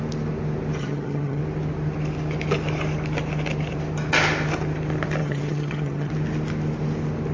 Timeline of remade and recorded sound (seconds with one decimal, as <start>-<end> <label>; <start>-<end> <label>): 0.0-0.8 recorded; 0.8-1.4 remade; 1.4-5.2 recorded; 5.2-6.1 remade; 6.1-7.3 recorded

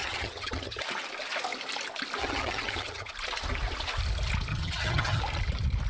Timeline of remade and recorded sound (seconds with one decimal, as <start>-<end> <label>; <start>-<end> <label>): 0.0-0.8 remade; 0.8-2.2 recorded; 2.2-3.1 remade; 3.1-4.5 recorded; 4.5-5.2 remade; 5.2-5.9 recorded

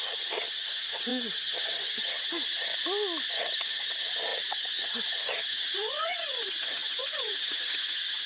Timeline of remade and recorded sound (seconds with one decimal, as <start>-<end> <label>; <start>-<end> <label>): 0.0-2.7 remade; 2.7-3.3 recorded; 3.3-8.3 remade

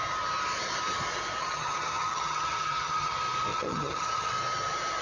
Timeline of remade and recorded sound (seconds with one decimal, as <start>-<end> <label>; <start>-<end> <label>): 0.0-1.4 recorded; 1.4-3.1 remade; 3.1-3.5 recorded; 3.5-4.3 remade; 4.3-5.0 recorded

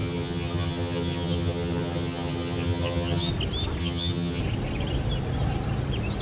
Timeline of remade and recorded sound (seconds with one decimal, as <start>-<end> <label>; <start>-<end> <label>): 0.0-3.3 remade; 3.3-3.8 recorded; 3.8-4.4 remade; 4.4-6.2 recorded

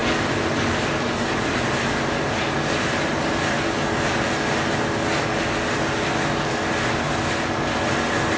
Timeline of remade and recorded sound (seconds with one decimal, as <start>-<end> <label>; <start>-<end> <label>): 0.0-8.4 recorded